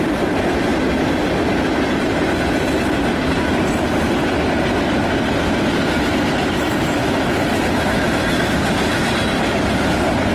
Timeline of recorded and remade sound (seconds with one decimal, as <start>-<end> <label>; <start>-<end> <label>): 0.0-10.3 recorded